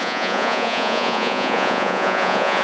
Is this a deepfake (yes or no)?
yes